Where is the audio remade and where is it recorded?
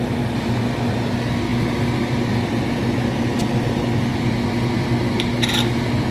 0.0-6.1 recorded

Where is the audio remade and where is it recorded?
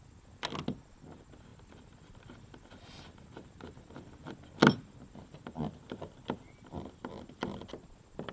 0.0-8.3 recorded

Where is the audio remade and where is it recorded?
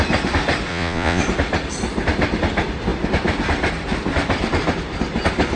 0.0-0.7 recorded; 0.7-1.2 remade; 1.2-5.6 recorded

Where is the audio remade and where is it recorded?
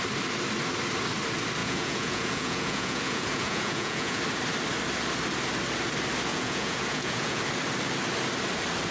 0.0-1.6 recorded; 1.6-4.2 remade; 4.2-6.3 recorded; 6.3-7.4 remade; 7.4-8.9 recorded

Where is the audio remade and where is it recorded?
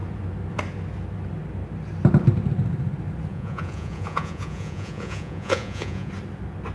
0.0-3.3 recorded; 3.3-6.1 remade; 6.1-6.7 recorded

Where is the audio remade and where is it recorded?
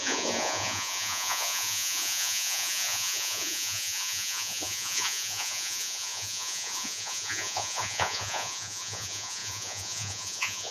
0.0-10.7 remade